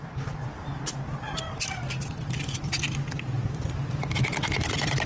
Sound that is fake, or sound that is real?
real